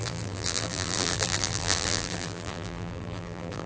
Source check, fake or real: fake